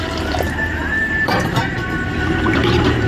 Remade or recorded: remade